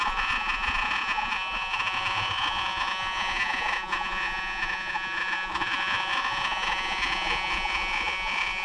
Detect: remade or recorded remade